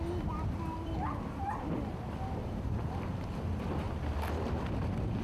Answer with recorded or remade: remade